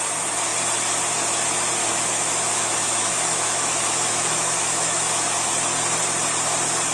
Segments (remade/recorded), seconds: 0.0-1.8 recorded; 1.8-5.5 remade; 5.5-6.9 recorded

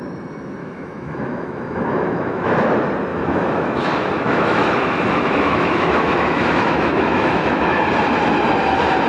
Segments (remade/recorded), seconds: 0.0-0.6 recorded; 0.6-2.7 remade; 2.7-3.1 recorded; 3.1-7.8 remade; 7.8-9.1 recorded

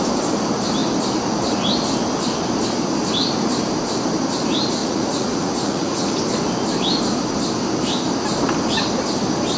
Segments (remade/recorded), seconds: 0.0-4.8 recorded; 4.8-6.1 remade; 6.1-9.6 recorded